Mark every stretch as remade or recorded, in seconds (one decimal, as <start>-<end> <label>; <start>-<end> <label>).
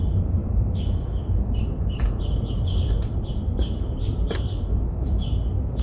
0.0-0.4 recorded; 0.4-2.0 remade; 2.0-5.8 recorded